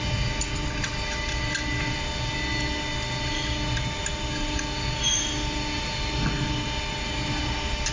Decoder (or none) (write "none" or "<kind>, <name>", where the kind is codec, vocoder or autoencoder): none